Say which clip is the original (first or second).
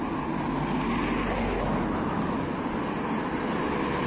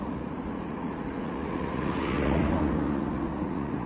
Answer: first